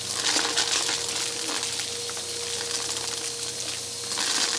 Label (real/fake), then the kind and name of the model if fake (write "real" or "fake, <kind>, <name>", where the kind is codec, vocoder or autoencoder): real